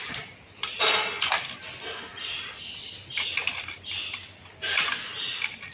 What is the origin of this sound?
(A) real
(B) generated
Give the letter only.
A